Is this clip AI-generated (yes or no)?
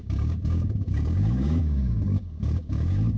yes